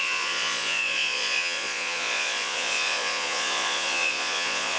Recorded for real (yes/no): no